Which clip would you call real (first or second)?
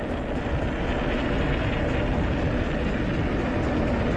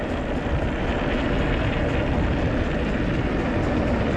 first